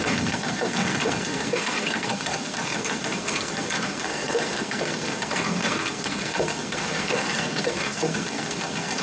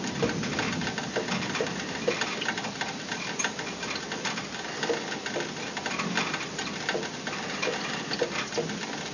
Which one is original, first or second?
second